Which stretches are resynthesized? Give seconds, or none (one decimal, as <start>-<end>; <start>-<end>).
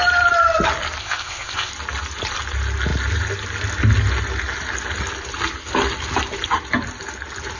1.0-1.7